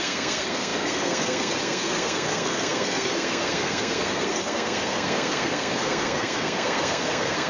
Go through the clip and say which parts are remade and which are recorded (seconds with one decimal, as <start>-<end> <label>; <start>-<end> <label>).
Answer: 0.0-7.5 remade

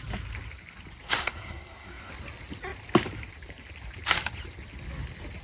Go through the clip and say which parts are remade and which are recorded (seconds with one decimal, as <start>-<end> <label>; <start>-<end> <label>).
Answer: 0.0-1.2 recorded; 1.2-2.1 remade; 2.1-5.4 recorded